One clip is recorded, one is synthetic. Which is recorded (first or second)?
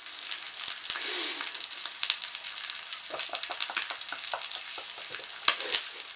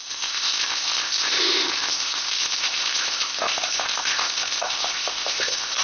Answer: first